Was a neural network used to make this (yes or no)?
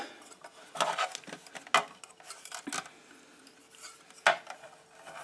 no